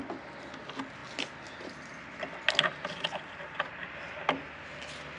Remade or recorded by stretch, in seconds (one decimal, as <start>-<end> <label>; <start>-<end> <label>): 0.0-5.2 recorded